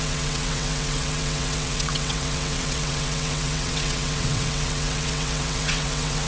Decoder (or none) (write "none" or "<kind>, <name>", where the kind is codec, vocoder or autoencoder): vocoder, WaveNeXt